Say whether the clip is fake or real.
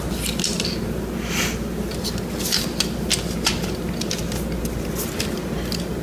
real